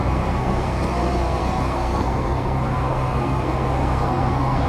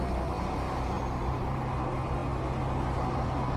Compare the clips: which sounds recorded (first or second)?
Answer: second